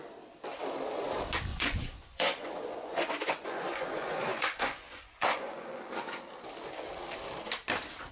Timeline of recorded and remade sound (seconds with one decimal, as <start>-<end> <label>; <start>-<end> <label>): 0.0-1.5 recorded; 1.5-5.9 remade; 5.9-8.1 recorded